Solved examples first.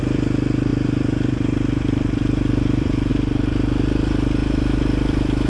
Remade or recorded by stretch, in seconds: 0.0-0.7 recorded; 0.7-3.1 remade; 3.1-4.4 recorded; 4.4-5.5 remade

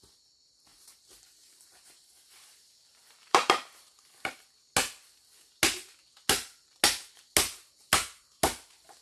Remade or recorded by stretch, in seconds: 0.0-0.7 recorded; 0.7-3.9 remade; 3.9-9.0 recorded